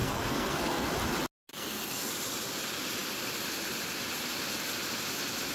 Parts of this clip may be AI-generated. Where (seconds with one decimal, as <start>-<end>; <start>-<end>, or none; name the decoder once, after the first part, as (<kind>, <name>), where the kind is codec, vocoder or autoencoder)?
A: 0.0-0.9 (codec, SNAC); 1.5-2.1